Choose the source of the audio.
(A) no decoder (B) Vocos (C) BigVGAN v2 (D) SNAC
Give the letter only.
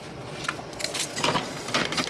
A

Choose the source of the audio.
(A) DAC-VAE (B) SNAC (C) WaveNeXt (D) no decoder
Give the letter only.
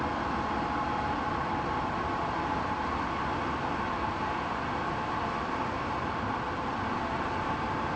D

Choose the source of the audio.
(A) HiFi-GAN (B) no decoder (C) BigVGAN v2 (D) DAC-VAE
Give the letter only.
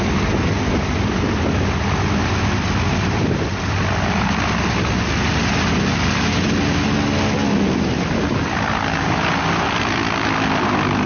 B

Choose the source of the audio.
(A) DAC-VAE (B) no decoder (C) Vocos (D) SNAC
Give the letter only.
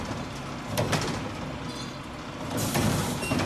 B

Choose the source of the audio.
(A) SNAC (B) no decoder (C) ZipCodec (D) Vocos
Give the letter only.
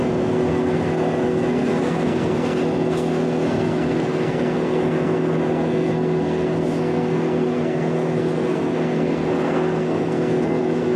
A